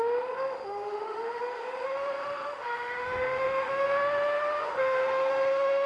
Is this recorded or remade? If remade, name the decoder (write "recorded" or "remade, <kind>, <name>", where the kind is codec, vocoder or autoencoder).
remade, autoencoder, DAC-VAE